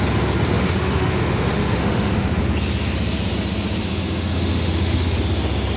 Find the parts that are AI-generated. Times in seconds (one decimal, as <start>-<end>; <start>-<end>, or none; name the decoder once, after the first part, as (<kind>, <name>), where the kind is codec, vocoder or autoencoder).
0.5-2.4 (autoencoder, DAC-VAE); 3.8-5.2